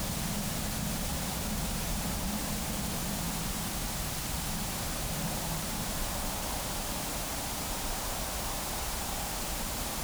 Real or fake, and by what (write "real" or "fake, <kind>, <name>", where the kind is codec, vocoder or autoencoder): fake, vocoder, BigVGAN v2